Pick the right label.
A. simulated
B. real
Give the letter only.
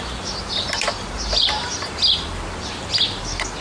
B